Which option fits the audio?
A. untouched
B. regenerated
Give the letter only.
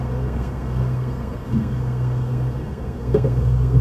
B